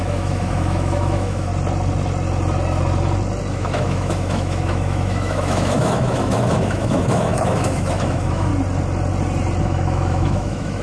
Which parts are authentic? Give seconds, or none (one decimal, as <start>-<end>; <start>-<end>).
1.5-3.5; 8.5-9.6

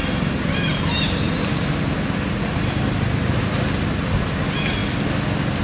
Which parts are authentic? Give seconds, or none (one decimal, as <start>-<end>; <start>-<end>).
3.4-5.6

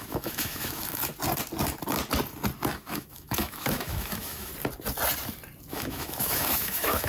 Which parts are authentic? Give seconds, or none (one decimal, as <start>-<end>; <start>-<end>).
1.1-2.7; 4.5-5.7

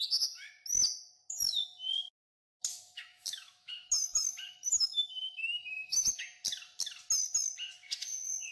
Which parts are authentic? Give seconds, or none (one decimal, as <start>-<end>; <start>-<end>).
0.0-2.7; 6.1-8.5

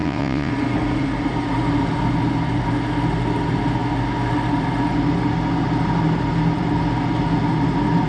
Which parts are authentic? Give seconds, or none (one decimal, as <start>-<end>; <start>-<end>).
0.5-8.1

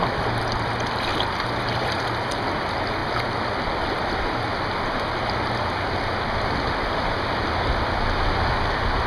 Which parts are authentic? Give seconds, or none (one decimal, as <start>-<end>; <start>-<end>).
0.0-1.1; 2.0-9.1

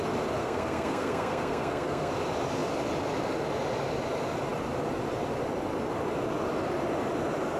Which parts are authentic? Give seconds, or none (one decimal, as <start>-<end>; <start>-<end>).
0.0-0.4; 2.1-7.6